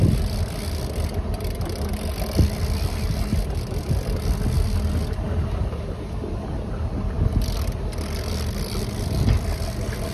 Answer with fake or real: real